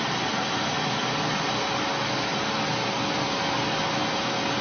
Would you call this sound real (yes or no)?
yes